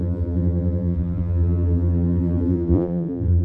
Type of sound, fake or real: fake